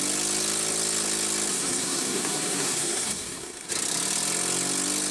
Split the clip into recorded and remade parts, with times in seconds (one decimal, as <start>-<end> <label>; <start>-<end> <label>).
0.0-1.5 recorded; 1.5-3.7 remade; 3.7-5.1 recorded

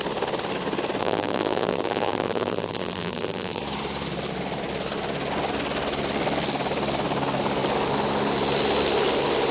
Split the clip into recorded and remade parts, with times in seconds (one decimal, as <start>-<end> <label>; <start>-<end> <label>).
0.0-1.0 recorded; 1.0-3.6 remade; 3.6-9.5 recorded

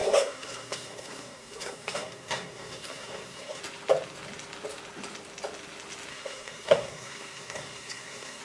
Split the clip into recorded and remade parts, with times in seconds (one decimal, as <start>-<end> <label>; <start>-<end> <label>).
0.0-3.6 remade; 3.6-6.1 recorded; 6.1-8.4 remade

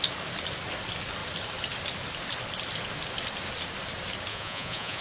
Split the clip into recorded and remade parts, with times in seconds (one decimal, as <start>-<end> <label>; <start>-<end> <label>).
0.0-4.3 recorded; 4.3-5.0 remade

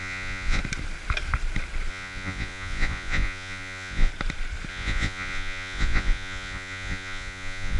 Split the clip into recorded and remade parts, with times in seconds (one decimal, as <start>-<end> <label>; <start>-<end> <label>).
0.0-0.6 remade; 0.6-1.9 recorded; 1.9-4.1 remade; 4.1-4.7 recorded; 4.7-7.8 remade

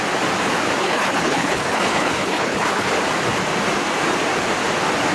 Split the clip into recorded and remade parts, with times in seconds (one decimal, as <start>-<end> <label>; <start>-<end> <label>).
0.0-0.8 recorded; 0.8-2.9 remade; 2.9-5.1 recorded